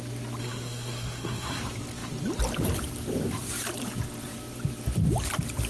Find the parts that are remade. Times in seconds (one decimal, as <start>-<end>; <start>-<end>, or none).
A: 0.4-1.6